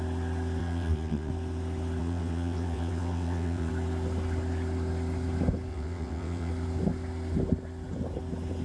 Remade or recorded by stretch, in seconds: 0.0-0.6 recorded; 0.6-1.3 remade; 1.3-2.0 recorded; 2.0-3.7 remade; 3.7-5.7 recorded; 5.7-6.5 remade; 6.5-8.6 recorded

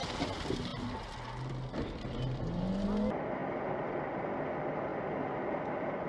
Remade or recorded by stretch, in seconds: 0.0-6.1 recorded

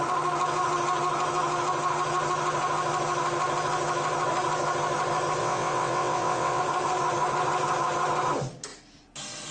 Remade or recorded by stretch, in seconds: 0.0-5.4 recorded; 5.4-6.6 remade; 6.6-9.5 recorded

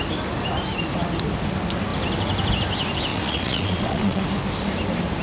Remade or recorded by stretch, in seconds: 0.0-3.1 recorded; 3.1-4.2 remade; 4.2-5.2 recorded